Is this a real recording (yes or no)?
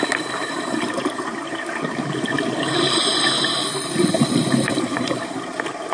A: no